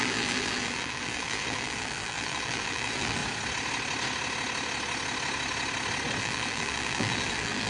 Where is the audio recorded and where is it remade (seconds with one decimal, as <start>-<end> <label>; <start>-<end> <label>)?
0.0-3.2 remade; 3.2-6.2 recorded; 6.2-7.7 remade